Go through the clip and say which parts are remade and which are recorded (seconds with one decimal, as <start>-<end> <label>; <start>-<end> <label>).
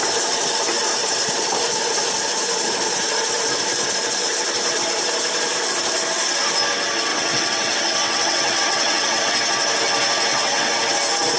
0.0-7.1 recorded; 7.1-9.2 remade; 9.2-10.3 recorded; 10.3-10.8 remade; 10.8-11.4 recorded